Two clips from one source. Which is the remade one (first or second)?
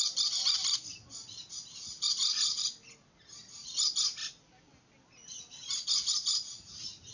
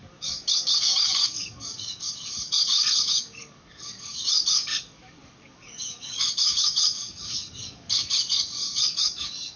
second